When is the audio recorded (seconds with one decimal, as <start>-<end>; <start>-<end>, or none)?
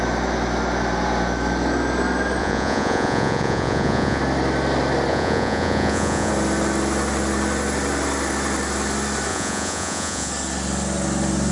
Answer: 0.0-2.4; 4.2-5.1; 6.3-9.3; 10.3-11.5